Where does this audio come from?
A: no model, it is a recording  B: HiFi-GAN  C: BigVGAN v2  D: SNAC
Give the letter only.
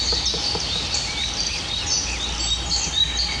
C